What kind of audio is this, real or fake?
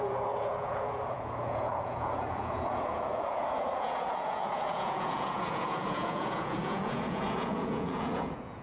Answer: fake